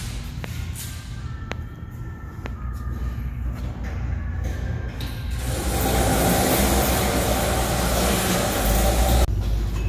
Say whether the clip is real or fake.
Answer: real